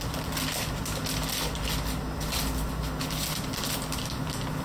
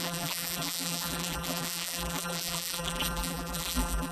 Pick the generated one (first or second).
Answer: second